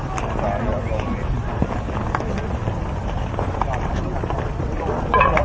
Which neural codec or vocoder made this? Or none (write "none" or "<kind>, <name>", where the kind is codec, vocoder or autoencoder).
none